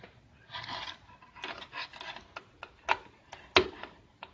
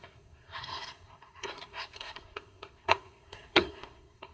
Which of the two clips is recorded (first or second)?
first